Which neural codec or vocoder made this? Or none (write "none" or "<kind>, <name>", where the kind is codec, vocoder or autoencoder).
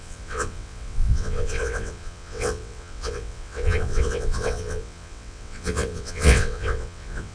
vocoder, WaveNeXt